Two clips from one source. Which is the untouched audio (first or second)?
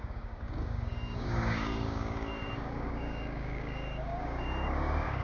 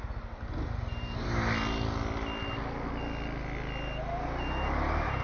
second